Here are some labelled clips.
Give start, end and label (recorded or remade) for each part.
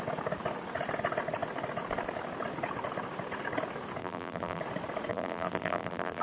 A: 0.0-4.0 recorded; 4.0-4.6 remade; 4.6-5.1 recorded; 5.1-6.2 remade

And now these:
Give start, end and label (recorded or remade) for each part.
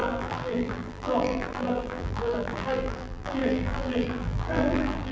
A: 0.0-5.1 remade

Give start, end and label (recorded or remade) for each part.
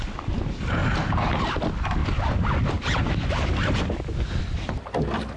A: 0.0-0.8 recorded; 0.8-1.4 remade; 1.4-5.4 recorded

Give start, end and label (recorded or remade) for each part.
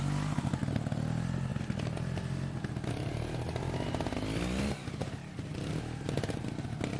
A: 0.0-7.0 recorded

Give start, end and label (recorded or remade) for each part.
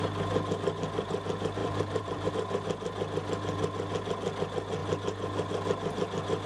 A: 0.0-1.6 recorded; 1.6-2.3 remade; 2.3-6.5 recorded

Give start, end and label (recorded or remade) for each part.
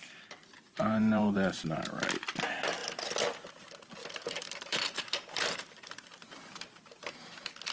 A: 0.0-0.4 recorded; 0.4-1.9 remade; 1.9-4.0 recorded; 4.0-7.1 remade; 7.1-7.7 recorded